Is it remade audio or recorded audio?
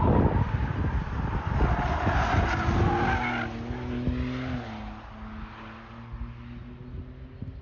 recorded